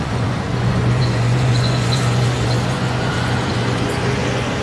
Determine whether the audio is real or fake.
fake